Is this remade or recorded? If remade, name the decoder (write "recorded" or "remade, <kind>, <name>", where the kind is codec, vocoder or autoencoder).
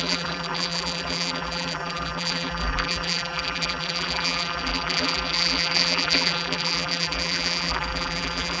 remade, vocoder, BigVGAN v2